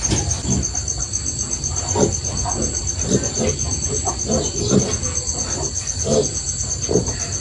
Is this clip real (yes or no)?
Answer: yes